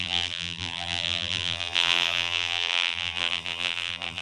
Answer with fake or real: fake